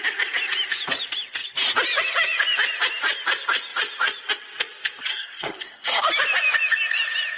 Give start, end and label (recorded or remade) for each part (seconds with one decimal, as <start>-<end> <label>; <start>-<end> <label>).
0.0-5.1 recorded; 5.1-6.0 remade; 6.0-7.4 recorded